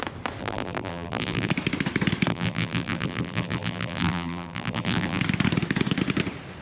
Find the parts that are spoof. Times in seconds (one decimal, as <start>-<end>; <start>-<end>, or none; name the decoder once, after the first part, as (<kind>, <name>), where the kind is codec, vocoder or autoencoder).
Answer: 0.4-1.5 (vocoder, BigVGAN v2); 2.3-5.2